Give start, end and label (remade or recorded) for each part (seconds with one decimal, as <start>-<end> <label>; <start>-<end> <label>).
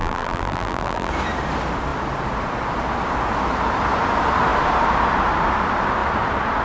0.0-1.1 remade; 1.1-6.6 recorded